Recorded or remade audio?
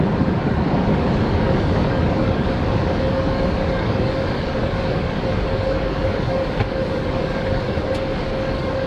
remade